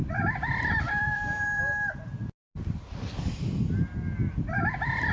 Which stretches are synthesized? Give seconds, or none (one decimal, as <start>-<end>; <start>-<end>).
0.0-1.6